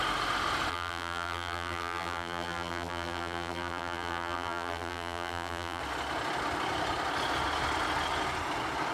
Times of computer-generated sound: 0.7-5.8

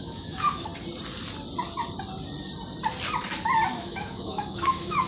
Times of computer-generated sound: 0.0-0.7; 3.8-5.1

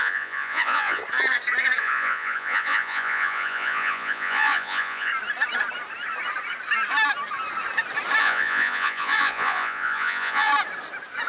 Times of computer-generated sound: 0.0-1.0; 1.8-5.1; 8.2-10.5

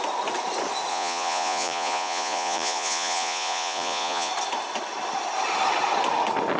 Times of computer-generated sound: 0.9-4.3

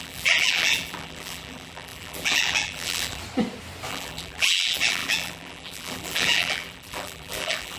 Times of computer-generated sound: 0.0-3.2; 3.9-7.8

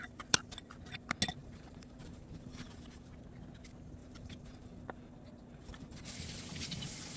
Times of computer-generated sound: 1.4-3.1; 4.0-6.1